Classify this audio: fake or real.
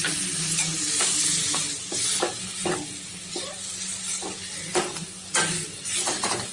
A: real